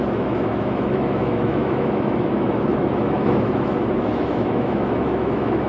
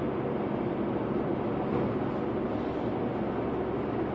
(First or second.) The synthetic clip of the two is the first